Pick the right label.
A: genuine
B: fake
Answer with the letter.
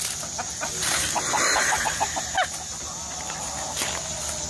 A